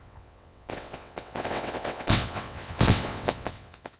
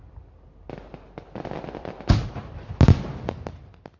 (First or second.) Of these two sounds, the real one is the second